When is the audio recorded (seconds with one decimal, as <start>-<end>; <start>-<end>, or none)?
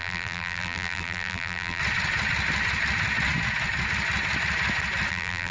1.8-5.1